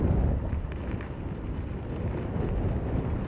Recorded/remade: recorded